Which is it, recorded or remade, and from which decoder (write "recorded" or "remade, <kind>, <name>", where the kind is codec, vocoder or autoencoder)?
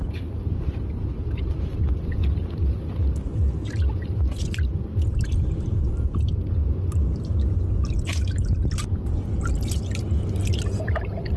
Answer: recorded